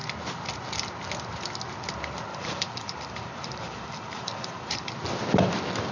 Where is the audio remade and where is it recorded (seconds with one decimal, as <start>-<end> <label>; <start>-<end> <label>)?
0.0-2.3 recorded; 2.3-4.9 remade; 4.9-5.9 recorded